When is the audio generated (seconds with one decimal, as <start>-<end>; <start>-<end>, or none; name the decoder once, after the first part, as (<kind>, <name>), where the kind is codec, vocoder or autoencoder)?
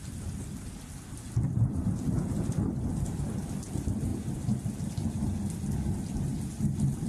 none